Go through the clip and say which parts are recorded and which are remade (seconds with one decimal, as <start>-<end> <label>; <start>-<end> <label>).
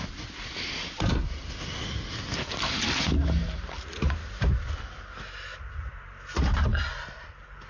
0.0-7.7 recorded